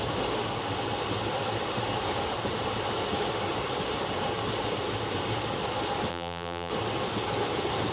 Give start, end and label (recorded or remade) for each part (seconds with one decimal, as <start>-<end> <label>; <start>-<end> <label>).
0.0-6.1 recorded; 6.1-6.7 remade; 6.7-7.9 recorded